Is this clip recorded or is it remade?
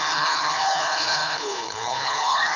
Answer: remade